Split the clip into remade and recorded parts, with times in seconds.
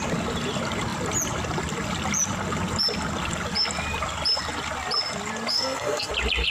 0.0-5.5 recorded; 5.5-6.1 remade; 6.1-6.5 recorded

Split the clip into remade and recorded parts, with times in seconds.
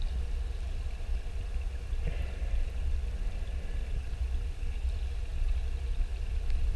0.0-6.8 recorded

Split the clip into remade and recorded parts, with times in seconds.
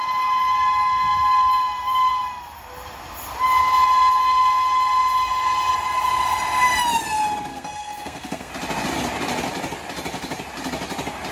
0.0-7.5 recorded; 7.5-8.5 remade; 8.5-11.3 recorded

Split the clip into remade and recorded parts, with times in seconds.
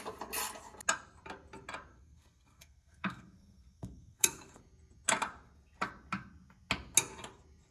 0.0-1.9 recorded; 1.9-4.6 remade; 4.6-7.7 recorded